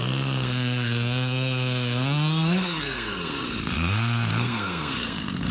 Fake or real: fake